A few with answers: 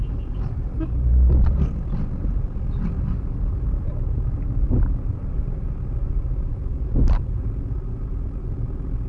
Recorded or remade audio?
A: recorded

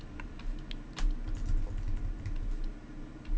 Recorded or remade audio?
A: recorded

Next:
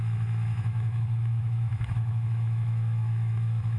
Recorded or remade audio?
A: remade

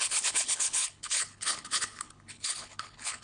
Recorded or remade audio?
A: remade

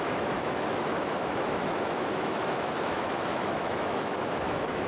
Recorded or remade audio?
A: remade